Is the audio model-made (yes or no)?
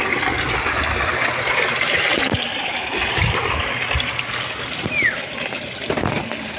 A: no